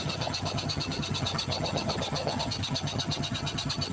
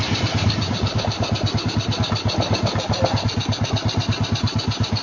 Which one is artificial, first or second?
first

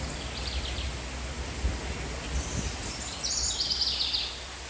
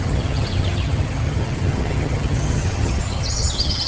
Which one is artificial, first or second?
second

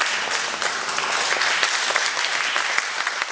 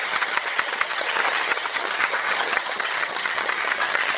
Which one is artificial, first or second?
second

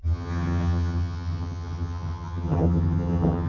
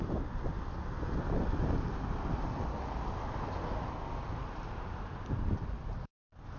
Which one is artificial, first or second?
first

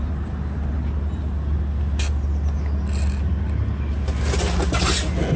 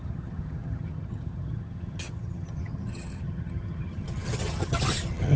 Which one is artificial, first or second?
second